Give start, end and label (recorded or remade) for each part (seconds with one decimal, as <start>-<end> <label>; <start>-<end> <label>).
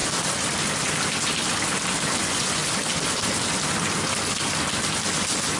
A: 0.0-2.2 recorded; 2.2-2.6 remade; 2.6-5.6 recorded